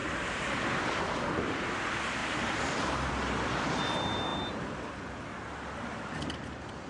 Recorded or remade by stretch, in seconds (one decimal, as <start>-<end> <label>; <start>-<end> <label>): 0.0-1.0 remade; 1.0-2.2 recorded; 2.2-3.1 remade; 3.1-6.9 recorded